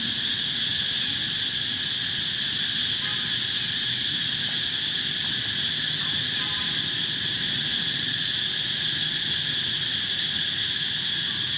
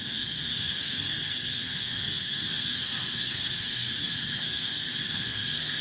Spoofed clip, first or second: second